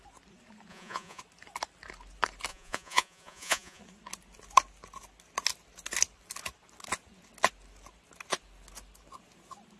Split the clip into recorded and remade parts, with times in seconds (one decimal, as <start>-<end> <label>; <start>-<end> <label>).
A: 0.0-0.7 recorded; 0.7-1.2 remade; 1.2-2.5 recorded; 2.5-3.8 remade; 3.8-9.8 recorded